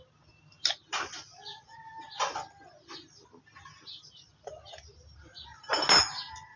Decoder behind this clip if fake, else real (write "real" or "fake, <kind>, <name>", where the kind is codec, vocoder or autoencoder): real